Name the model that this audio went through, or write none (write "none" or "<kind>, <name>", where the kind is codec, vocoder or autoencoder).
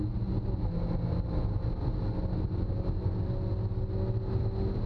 none